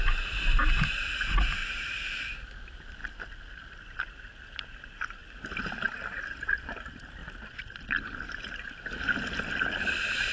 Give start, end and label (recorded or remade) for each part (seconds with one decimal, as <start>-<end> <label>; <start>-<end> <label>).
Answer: 0.0-1.6 recorded; 1.6-2.3 remade; 2.3-3.0 recorded; 3.0-3.8 remade; 3.8-7.2 recorded; 7.2-8.2 remade; 8.2-10.3 recorded